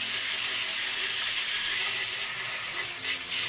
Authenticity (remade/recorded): recorded